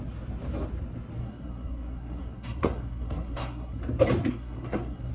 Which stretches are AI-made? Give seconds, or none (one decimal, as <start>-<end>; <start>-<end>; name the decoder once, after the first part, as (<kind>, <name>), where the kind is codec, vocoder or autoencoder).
1.2-3.8 (codec, SNAC); 4.2-5.1